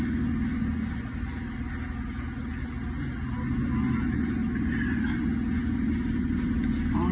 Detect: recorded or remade recorded